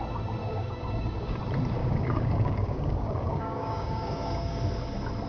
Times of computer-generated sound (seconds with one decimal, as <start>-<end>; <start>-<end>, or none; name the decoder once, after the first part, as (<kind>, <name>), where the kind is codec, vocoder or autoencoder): 0.4-1.4 (codec, DAC); 1.8-4.6